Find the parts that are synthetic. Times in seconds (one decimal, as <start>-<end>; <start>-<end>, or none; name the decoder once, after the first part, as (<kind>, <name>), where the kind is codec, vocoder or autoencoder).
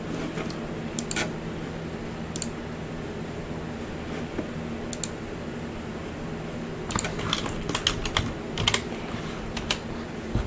none